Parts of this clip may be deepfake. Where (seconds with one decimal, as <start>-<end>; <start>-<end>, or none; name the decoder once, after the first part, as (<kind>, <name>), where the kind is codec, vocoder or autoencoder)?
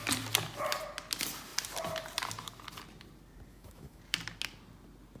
3.5-4.0 (autoencoder, DAC-VAE)